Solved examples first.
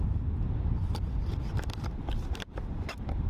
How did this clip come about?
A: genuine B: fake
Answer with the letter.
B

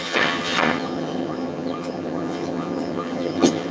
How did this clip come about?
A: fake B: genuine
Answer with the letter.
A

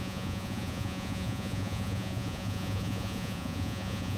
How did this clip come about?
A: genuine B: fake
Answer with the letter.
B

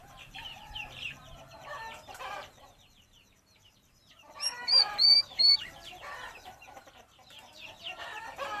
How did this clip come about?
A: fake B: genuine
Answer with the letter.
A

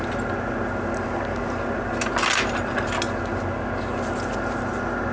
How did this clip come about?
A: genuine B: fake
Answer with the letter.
A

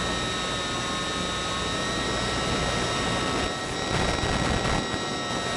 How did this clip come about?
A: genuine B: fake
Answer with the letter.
A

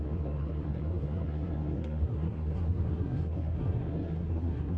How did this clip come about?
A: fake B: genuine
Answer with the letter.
A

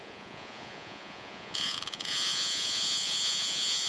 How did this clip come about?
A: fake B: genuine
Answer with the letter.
A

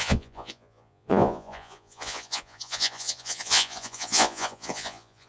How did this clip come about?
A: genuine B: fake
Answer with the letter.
B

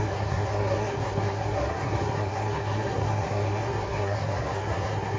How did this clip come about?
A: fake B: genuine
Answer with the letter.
A